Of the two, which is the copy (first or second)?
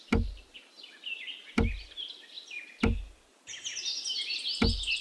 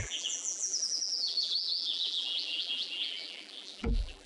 second